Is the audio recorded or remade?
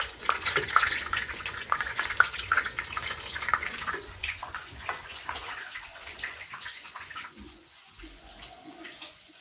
remade